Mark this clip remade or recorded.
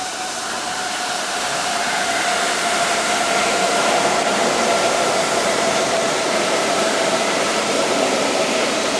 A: remade